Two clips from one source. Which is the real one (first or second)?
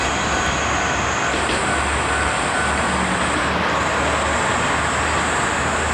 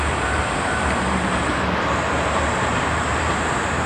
first